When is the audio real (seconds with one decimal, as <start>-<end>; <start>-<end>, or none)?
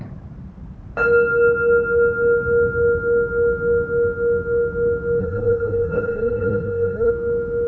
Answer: 0.0-5.2; 7.1-7.7